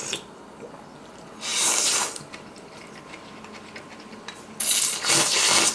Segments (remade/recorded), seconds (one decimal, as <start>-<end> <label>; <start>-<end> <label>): 0.0-5.7 recorded